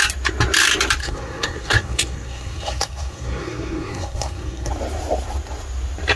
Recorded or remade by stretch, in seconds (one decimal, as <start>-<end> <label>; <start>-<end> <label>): 0.0-1.0 recorded; 1.0-4.7 remade; 4.7-6.2 recorded